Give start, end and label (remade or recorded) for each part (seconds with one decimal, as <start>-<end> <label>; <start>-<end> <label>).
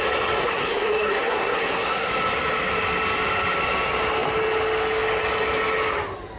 0.0-0.4 recorded; 0.4-2.1 remade; 2.1-6.4 recorded